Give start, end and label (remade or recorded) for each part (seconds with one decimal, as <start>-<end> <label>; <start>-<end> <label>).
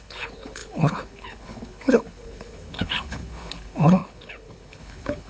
0.0-5.3 remade